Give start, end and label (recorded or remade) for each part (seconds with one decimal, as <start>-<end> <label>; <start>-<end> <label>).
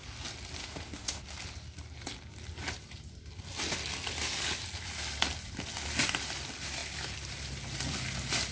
0.0-0.6 recorded; 0.6-1.2 remade; 1.2-8.5 recorded